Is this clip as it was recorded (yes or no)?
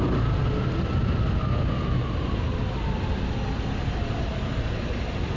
yes